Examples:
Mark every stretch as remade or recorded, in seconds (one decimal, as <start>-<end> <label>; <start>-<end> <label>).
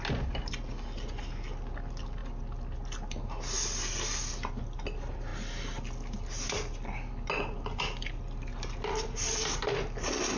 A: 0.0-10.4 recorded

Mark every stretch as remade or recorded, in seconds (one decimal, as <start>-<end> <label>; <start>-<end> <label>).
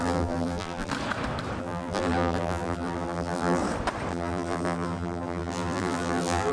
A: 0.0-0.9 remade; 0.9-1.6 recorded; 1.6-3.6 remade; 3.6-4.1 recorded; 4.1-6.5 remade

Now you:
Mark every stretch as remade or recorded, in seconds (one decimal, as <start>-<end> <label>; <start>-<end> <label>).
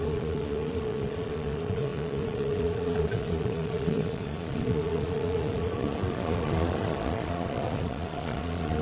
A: 0.0-8.8 remade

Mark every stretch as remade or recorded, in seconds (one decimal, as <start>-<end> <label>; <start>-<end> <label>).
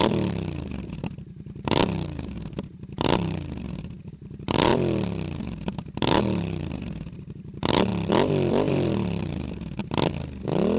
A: 0.0-4.7 remade; 4.7-5.4 recorded; 5.4-7.9 remade; 7.9-8.7 recorded; 8.7-9.8 remade; 9.8-10.8 recorded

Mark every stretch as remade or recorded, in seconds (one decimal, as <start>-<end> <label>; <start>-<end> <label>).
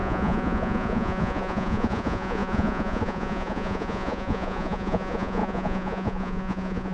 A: 0.0-6.9 remade